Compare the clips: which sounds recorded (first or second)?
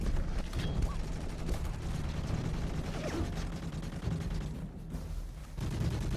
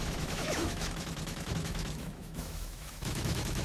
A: first